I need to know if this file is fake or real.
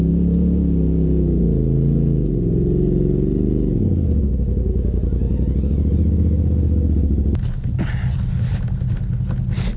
real